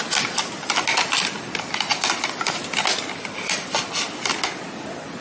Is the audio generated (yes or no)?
no